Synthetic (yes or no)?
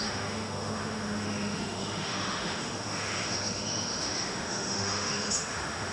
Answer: yes